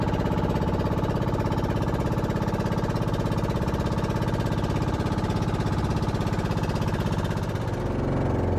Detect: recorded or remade recorded